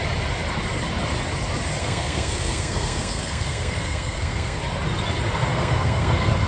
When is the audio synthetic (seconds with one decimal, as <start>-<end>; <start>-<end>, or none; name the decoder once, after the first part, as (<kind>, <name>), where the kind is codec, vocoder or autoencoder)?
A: 1.8-4.6 (codec, SNAC); 5.5-6.5